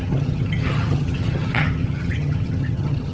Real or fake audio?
fake